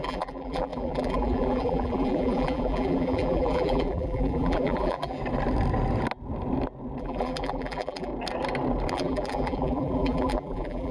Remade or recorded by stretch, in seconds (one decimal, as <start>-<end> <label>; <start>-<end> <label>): 0.0-5.2 remade; 5.2-7.0 recorded; 7.0-8.1 remade; 8.1-8.9 recorded; 8.9-10.9 remade